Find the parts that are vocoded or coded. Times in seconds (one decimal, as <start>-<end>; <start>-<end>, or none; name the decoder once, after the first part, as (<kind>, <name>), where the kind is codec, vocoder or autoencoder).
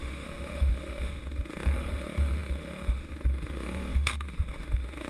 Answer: 0.0-5.1 (autoencoder, DAC-VAE)